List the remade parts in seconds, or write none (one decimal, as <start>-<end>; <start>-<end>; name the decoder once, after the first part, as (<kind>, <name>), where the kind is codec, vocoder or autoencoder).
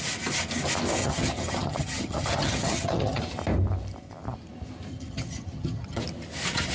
1.0-3.2 (vocoder, HiFi-GAN); 4.9-6.0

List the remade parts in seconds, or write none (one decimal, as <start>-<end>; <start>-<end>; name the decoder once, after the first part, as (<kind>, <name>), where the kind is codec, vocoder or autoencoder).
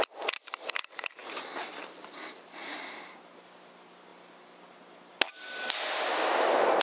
none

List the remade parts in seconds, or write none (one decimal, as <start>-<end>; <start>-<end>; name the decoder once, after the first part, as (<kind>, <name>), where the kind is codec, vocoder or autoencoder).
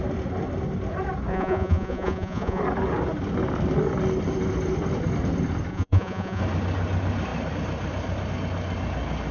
1.3-2.6 (vocoder, Vocos); 5.7-6.4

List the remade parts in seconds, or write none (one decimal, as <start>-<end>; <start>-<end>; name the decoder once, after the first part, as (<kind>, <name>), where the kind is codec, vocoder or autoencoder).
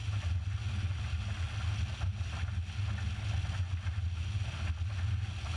none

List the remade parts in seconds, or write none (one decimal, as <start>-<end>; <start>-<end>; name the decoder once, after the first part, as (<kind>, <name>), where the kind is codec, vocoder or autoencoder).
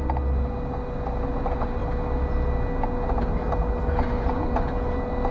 none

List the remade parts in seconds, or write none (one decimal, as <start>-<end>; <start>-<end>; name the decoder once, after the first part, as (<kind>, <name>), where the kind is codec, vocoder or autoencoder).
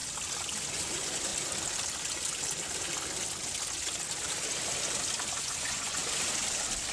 0.7-1.3 (vocoder, Vocos); 5.4-6.0